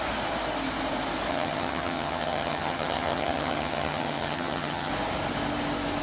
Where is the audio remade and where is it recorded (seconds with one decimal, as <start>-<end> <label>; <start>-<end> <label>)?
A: 0.0-1.3 recorded; 1.3-4.9 remade; 4.9-6.0 recorded